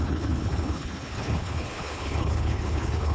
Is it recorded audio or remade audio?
remade